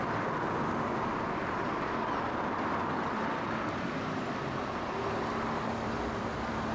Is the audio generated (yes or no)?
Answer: no